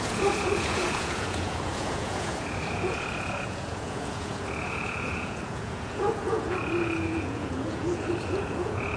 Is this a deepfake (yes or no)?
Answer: yes